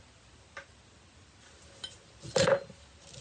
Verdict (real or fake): real